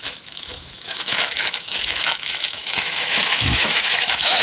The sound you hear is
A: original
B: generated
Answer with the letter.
B